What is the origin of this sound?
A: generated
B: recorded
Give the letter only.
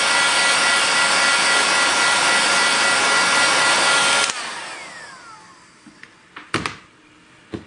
B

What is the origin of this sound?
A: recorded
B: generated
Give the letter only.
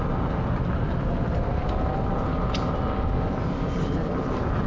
A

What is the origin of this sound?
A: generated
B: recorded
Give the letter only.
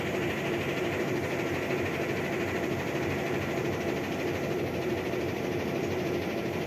B